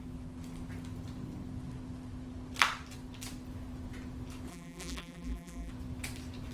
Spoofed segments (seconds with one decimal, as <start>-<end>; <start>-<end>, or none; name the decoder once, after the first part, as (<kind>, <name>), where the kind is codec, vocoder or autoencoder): 4.5-5.7 (vocoder, BigVGAN v2)

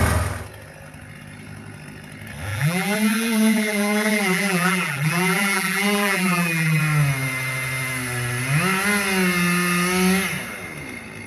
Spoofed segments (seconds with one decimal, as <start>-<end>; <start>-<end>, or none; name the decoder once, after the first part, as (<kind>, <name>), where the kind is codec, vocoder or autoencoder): 2.5-6.8 (vocoder, BigVGAN v2)

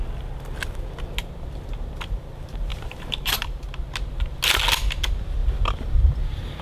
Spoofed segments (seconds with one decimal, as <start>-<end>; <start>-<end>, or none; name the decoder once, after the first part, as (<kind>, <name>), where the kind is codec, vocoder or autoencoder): 2.7-3.6 (vocoder, BigVGAN v2); 5.4-6.6

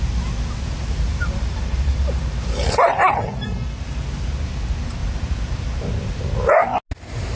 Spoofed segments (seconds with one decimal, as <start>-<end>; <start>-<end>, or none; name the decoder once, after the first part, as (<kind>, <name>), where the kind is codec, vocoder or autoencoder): 1.1-3.2 (vocoder, BigVGAN v2); 5.0-5.9

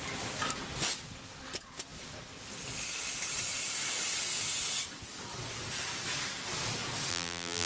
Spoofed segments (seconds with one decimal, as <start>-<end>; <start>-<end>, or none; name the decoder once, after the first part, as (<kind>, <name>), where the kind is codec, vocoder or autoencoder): 7.1-7.7 (vocoder, BigVGAN v2)

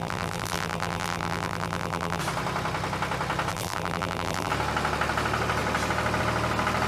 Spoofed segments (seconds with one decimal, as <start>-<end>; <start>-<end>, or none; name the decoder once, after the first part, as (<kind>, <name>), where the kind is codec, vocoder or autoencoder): 0.0-2.2 (vocoder, BigVGAN v2); 3.5-4.5